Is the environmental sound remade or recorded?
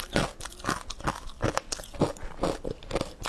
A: recorded